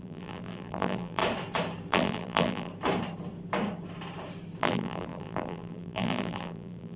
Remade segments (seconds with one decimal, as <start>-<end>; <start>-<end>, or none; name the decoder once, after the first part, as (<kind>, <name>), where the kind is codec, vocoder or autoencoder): 0.0-1.2 (vocoder, BigVGAN v2); 1.9-2.7; 4.6-7.0